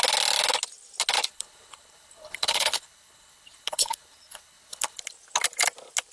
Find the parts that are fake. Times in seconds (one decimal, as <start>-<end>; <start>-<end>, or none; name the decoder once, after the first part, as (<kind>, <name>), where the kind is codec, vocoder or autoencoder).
1.3-5.0 (codec, HILCodec)

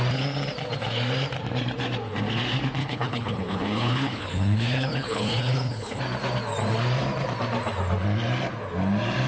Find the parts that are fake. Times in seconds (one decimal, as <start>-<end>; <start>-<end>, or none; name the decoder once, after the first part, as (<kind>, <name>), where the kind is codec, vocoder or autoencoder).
2.8-6.0 (codec, HILCodec)

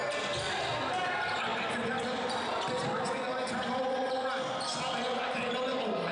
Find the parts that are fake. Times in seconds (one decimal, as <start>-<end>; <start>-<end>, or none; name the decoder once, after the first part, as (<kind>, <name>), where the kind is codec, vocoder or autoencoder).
none

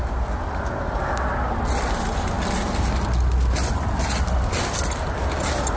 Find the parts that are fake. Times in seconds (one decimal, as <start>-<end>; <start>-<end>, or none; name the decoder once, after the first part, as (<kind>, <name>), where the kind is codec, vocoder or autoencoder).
none

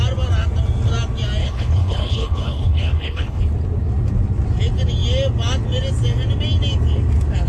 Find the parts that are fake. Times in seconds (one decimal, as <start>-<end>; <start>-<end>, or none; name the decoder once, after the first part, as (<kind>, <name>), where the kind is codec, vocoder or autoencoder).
1.4-3.4 (codec, HILCodec)

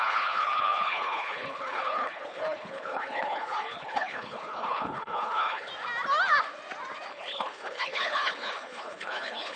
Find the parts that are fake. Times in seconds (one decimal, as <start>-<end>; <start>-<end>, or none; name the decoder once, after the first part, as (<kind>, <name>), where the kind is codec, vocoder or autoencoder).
0.0-5.7 (codec, HILCodec); 7.1-9.6

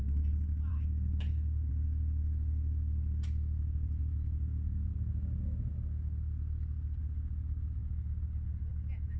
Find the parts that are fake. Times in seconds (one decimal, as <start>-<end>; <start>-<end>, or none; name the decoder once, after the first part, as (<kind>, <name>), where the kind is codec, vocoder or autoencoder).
0.7-1.7 (codec, HILCodec)

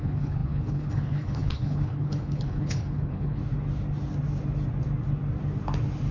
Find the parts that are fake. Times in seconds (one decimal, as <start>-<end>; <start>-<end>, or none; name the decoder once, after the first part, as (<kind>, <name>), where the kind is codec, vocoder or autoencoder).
0.0-3.4 (codec, HILCodec)